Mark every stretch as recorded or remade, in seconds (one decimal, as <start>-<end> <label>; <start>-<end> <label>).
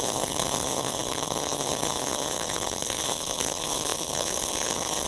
0.0-5.1 remade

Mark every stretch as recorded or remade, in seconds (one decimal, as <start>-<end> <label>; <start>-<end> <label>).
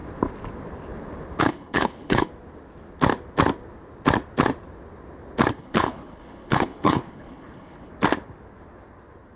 0.0-1.4 recorded; 1.4-2.3 remade; 2.3-5.5 recorded; 5.5-7.9 remade; 7.9-9.4 recorded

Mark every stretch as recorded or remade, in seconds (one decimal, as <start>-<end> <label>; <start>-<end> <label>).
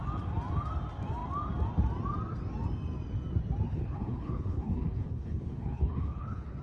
0.0-3.7 recorded; 3.7-6.6 remade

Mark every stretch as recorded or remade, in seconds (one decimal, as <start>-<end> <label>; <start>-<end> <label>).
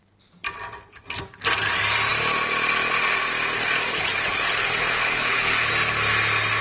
0.0-3.9 recorded; 3.9-5.7 remade; 5.7-6.6 recorded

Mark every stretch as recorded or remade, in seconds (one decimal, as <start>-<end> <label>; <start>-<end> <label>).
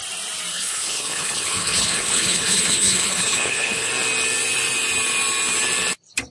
0.0-0.5 recorded; 0.5-3.9 remade; 3.9-6.3 recorded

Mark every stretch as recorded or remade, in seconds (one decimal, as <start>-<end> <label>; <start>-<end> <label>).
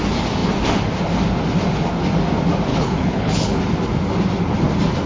0.0-2.7 recorded; 2.7-3.6 remade; 3.6-5.1 recorded